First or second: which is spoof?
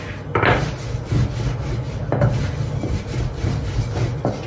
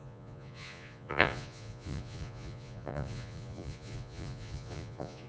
second